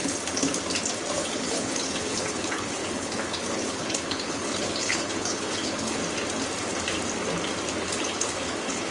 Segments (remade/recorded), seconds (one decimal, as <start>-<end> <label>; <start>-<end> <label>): 0.0-1.2 recorded; 1.2-6.0 remade; 6.0-7.8 recorded; 7.8-8.9 remade